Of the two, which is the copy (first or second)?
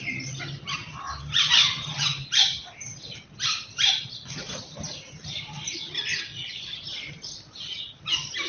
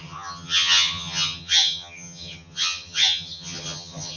second